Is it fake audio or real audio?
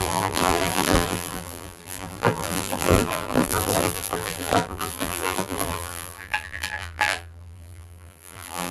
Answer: fake